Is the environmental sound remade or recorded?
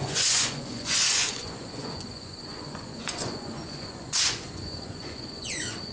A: remade